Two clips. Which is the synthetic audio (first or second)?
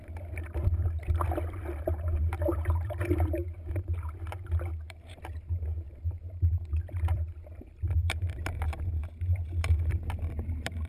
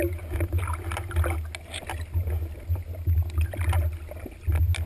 first